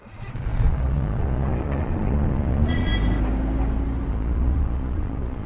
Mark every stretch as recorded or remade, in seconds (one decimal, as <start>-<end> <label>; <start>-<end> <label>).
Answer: 0.0-2.9 remade; 2.9-4.1 recorded; 4.1-5.5 remade